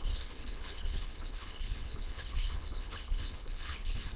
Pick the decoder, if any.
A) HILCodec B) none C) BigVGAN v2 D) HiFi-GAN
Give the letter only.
A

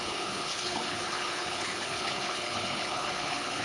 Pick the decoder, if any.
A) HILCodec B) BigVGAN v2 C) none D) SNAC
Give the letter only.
A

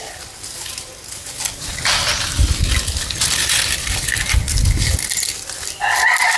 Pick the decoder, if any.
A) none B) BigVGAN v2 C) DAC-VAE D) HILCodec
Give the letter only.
A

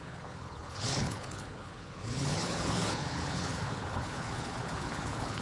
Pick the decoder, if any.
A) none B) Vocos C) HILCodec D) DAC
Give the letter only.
C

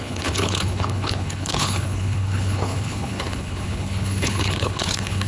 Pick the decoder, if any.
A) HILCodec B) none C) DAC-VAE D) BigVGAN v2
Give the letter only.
A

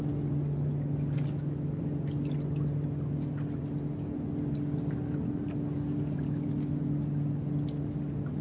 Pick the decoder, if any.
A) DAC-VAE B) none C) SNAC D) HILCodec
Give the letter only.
B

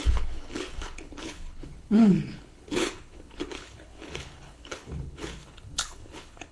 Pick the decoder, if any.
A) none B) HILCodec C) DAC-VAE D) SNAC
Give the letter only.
B